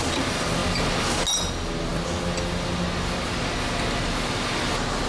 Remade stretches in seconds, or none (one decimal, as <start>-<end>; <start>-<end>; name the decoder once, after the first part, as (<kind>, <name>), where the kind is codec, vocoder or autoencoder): none